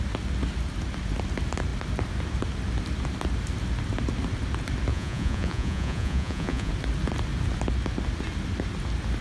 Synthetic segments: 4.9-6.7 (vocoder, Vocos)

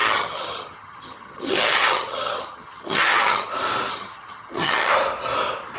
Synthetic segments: 0.0-3.5 (vocoder, HiFi-GAN); 3.9-4.9

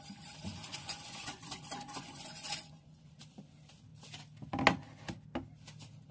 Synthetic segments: 0.7-3.1 (vocoder, Vocos)

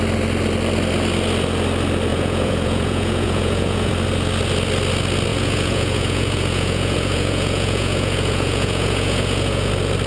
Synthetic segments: 2.1-3.9 (vocoder, Vocos); 5.3-9.7

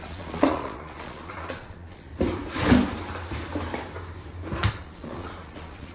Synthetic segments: 0.0-2.1 (vocoder, Vocos); 4.7-5.9

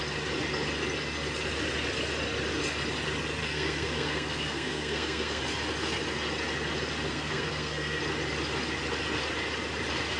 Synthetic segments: 3.4-5.4 (codec, SNAC); 7.1-8.0